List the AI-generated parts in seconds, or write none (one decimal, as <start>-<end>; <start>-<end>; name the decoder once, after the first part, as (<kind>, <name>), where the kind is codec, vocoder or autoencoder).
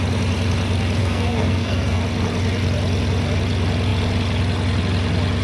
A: 1.0-2.0 (codec, SNAC)